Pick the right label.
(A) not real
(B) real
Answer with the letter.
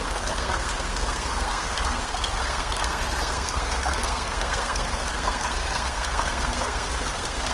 A